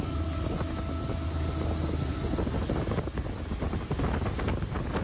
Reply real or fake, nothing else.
real